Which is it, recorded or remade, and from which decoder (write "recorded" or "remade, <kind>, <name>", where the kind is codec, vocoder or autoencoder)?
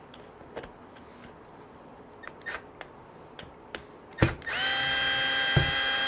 recorded